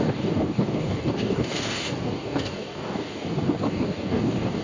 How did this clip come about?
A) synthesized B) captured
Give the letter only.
A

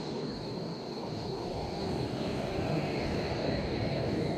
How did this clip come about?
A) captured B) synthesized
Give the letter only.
B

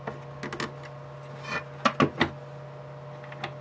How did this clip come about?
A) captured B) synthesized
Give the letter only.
A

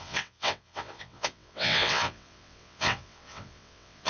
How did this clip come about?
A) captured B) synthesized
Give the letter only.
B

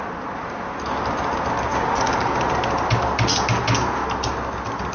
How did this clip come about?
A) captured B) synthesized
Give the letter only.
A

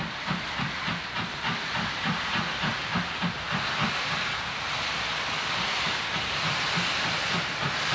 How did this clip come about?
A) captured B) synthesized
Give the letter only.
A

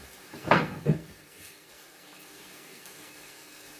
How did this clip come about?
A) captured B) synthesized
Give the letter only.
B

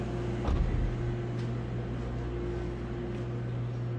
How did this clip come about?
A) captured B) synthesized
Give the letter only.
A